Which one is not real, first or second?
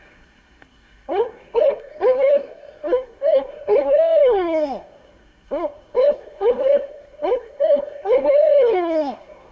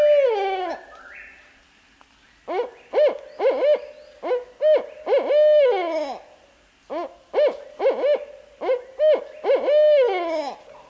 first